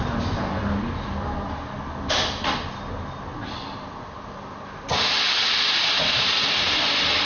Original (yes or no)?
yes